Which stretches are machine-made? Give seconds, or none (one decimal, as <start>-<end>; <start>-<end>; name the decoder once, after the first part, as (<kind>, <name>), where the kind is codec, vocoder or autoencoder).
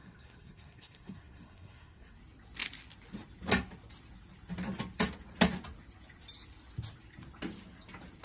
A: 0.0-2.2 (codec, SNAC)